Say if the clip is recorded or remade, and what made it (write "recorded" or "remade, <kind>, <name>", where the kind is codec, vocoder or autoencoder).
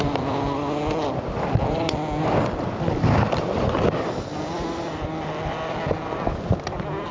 recorded